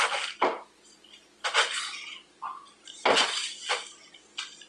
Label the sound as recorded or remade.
recorded